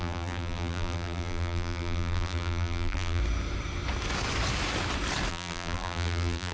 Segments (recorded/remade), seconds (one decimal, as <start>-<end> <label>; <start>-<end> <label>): 0.0-3.2 remade; 3.2-5.3 recorded; 5.3-6.5 remade